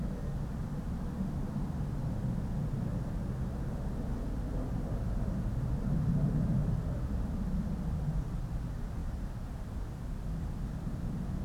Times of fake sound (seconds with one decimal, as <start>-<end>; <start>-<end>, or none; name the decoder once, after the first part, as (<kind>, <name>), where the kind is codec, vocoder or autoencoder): none